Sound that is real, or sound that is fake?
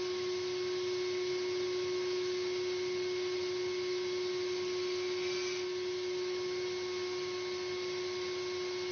real